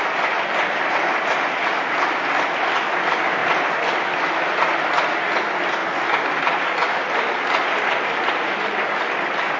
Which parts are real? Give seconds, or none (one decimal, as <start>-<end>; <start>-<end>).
0.0-9.6